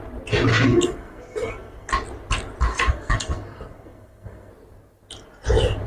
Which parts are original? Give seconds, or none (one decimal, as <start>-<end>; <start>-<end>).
0.0-0.5; 1.9-2.7; 4.5-5.9